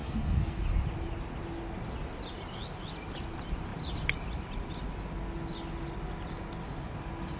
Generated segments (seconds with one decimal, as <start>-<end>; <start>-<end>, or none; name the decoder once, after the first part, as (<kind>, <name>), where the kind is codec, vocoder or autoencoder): 0.0-0.6 (codec, SNAC)